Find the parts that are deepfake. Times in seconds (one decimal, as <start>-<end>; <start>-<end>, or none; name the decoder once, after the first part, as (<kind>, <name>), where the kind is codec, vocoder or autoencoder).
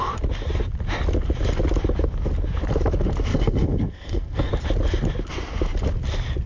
3.3-4.5 (codec, SNAC)